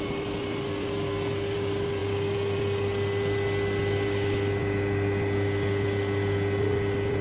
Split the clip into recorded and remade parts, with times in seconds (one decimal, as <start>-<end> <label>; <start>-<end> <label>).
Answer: 0.0-7.2 recorded